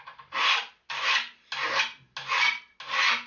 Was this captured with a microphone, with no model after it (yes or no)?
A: yes